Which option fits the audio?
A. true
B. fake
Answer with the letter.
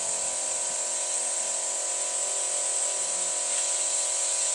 A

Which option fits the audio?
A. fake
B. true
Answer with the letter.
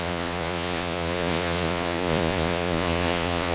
A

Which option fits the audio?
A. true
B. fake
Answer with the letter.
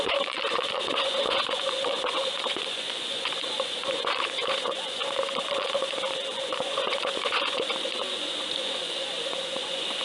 B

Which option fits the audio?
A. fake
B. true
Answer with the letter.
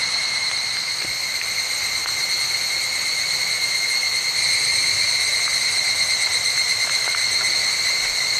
B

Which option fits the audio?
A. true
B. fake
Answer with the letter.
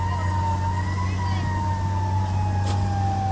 A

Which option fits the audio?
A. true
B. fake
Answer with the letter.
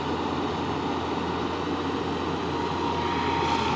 A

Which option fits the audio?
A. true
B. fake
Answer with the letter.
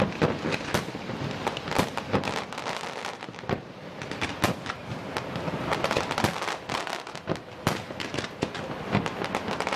A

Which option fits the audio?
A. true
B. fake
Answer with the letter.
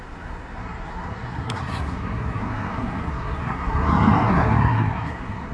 B